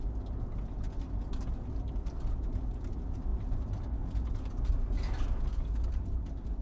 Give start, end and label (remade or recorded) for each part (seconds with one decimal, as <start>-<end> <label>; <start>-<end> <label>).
0.0-6.6 recorded